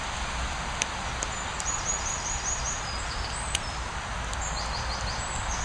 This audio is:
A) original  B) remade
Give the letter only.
A